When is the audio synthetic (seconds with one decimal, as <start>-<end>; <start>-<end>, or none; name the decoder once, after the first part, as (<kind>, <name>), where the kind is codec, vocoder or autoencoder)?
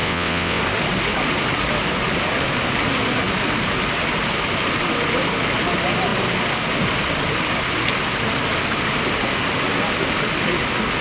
0.0-0.6 (vocoder, WaveNeXt)